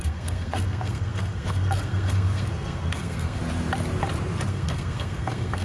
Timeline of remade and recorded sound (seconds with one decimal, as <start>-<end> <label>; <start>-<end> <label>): 0.0-3.4 remade; 3.4-4.5 recorded; 4.5-5.6 remade